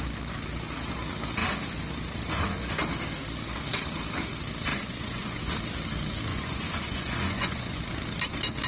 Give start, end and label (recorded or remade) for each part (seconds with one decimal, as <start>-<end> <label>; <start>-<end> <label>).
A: 0.0-4.7 recorded; 4.7-5.4 remade; 5.4-6.3 recorded; 6.3-7.8 remade; 7.8-8.7 recorded